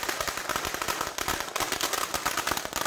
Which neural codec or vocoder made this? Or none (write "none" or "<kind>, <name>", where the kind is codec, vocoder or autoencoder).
none